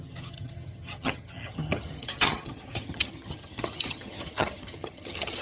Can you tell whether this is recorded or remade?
remade